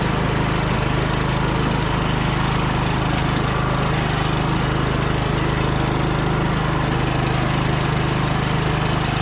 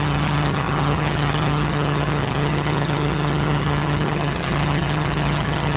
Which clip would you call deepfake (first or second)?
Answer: second